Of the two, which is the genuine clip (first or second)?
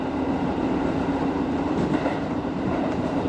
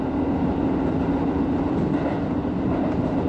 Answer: second